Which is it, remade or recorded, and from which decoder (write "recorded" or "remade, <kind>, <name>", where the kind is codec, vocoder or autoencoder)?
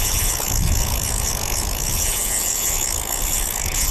remade, vocoder, Vocos